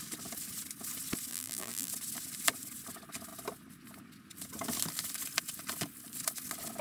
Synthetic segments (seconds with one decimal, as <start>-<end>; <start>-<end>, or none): 1.3-1.9

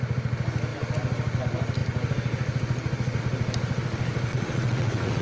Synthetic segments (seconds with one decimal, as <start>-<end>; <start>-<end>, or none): 4.3-5.2

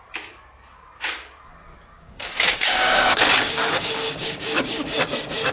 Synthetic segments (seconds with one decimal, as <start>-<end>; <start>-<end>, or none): 1.7-5.0

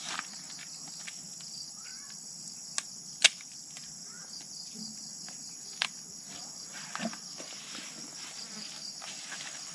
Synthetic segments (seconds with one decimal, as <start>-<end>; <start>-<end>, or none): 3.8-4.8

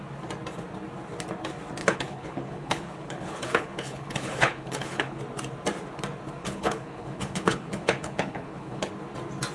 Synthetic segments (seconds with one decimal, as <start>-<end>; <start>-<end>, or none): 1.8-5.2; 6.4-8.9

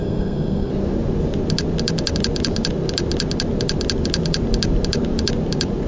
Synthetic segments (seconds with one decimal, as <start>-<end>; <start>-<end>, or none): 0.0-0.7